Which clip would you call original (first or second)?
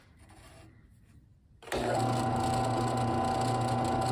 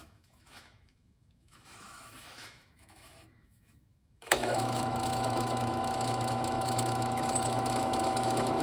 first